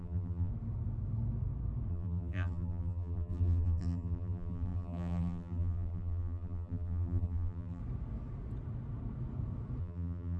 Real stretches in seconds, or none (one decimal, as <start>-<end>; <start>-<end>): 0.5-1.9; 7.8-9.8